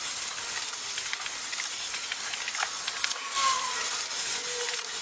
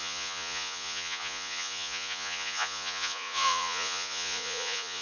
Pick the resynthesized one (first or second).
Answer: second